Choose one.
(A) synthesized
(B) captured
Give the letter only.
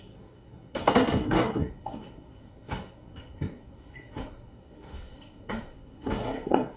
A